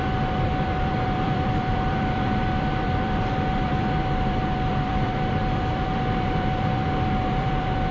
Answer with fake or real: fake